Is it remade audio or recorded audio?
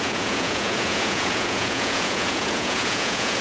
remade